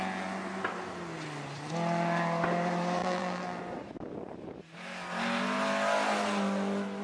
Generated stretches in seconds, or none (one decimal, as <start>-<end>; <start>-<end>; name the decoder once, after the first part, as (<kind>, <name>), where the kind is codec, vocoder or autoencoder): 3.0-3.6 (vocoder, BigVGAN v2)